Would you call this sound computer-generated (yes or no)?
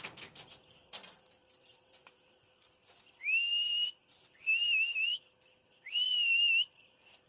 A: no